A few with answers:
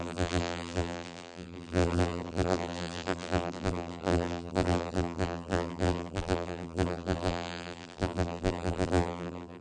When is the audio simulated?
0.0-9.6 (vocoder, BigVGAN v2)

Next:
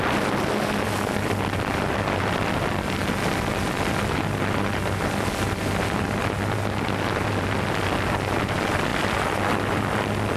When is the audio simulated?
none

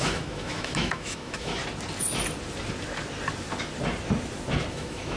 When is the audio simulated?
0.0-1.6 (autoencoder, DAC-VAE); 4.7-5.2